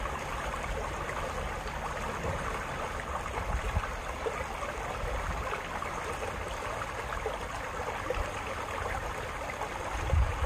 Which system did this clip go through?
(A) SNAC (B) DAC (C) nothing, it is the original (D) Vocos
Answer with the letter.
C